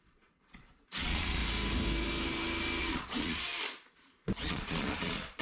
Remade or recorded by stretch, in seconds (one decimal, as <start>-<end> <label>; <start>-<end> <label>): 0.0-1.4 remade; 1.4-2.8 recorded; 2.8-3.5 remade; 3.5-4.4 recorded; 4.4-5.4 remade